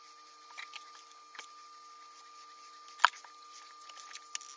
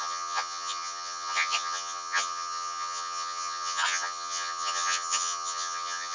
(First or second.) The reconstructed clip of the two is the second